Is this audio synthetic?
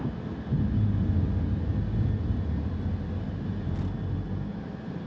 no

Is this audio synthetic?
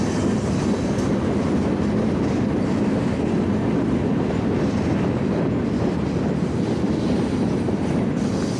no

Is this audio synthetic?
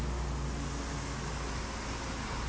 no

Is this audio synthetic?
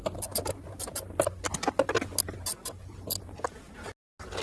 no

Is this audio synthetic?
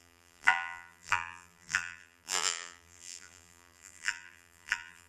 yes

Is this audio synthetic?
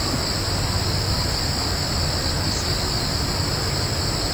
no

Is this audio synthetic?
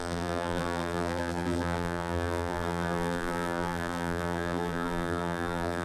yes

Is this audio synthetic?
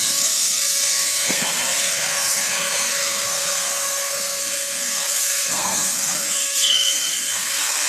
yes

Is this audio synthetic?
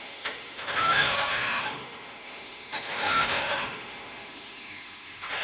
yes